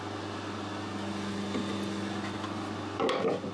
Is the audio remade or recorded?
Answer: recorded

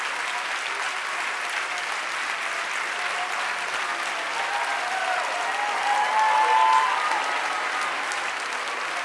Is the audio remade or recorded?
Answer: recorded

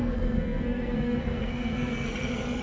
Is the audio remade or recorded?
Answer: remade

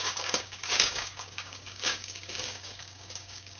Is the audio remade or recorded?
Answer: remade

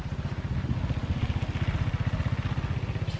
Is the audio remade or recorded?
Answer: recorded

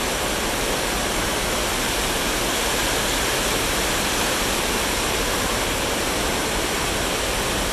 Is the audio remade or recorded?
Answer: remade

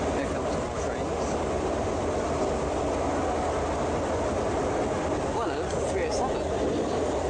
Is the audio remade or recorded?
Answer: recorded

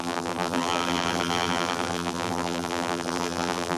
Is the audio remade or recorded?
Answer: remade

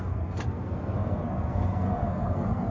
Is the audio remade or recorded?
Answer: remade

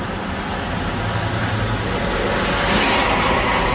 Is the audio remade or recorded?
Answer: recorded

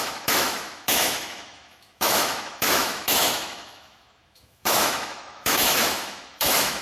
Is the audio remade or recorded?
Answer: remade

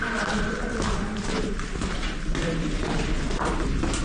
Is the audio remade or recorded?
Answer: remade